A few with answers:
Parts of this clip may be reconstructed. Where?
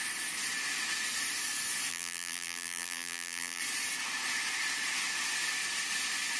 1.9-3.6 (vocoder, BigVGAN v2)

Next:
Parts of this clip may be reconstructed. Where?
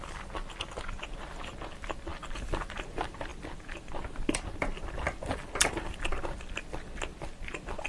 none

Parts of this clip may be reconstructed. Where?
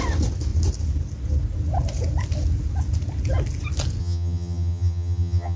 4.0-5.6 (vocoder, HiFi-GAN)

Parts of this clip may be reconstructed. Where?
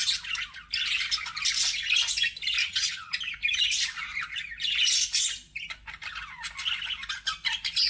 2.6-3.2 (vocoder, HiFi-GAN)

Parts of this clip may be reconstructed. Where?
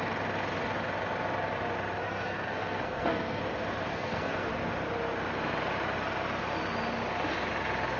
2.0-3.4 (codec, SNAC); 3.9-4.5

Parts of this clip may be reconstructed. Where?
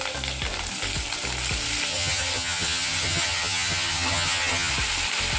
1.9-4.7 (vocoder, HiFi-GAN)